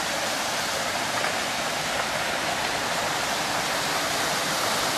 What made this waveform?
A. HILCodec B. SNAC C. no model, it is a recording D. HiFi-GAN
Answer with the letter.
C